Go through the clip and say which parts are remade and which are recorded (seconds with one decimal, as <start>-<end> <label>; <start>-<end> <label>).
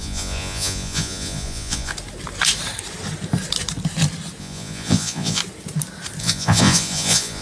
0.0-1.9 remade; 1.9-4.4 recorded; 4.4-5.4 remade; 5.4-6.2 recorded; 6.2-7.4 remade